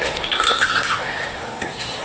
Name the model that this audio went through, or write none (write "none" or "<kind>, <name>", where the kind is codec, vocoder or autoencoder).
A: codec, SNAC